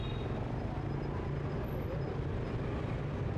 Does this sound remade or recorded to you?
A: recorded